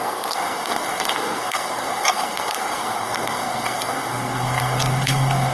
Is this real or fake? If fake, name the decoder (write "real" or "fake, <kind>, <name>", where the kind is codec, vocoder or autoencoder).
fake, codec, SNAC